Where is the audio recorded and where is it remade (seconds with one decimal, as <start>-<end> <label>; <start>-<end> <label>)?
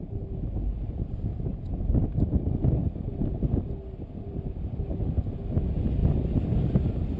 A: 0.0-1.3 recorded; 1.3-1.8 remade; 1.8-7.2 recorded